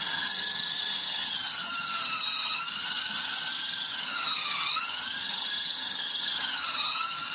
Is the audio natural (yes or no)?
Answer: no